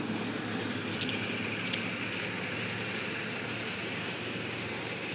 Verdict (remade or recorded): recorded